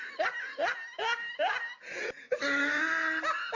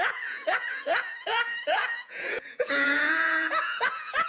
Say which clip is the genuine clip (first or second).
first